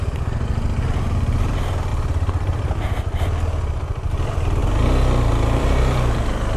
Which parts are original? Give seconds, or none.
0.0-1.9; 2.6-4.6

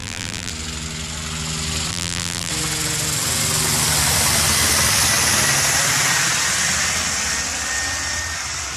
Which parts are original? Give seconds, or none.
0.5-1.9; 2.5-8.8

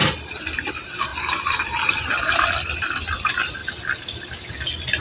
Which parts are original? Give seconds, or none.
0.0-1.1; 2.0-3.6; 4.5-5.0

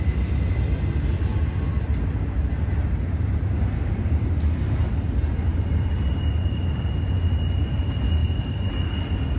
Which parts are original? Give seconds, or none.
0.0-5.5; 6.2-8.2; 8.7-9.4

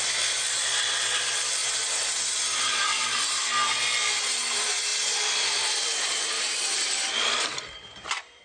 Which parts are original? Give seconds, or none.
2.8-4.3

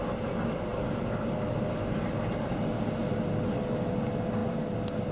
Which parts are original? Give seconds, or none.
0.0-5.1

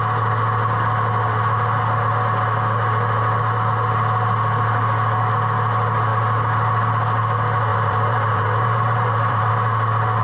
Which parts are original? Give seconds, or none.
0.0-7.7; 9.5-10.2

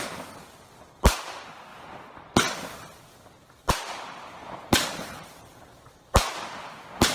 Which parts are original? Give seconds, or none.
0.0-4.4; 6.2-7.1